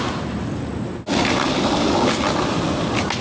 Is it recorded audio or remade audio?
recorded